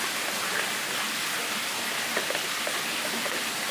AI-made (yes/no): no